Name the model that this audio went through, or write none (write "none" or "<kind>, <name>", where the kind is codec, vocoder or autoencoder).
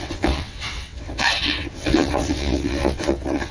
vocoder, WaveNeXt